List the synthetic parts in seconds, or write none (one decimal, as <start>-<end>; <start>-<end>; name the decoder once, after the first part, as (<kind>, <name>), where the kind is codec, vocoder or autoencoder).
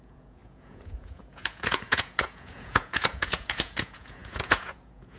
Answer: 0.0-5.2 (vocoder, Vocos)